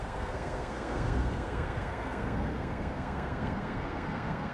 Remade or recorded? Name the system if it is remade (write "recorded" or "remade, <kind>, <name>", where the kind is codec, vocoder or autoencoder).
remade, codec, SNAC